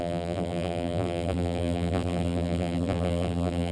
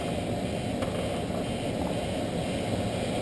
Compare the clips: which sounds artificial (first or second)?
first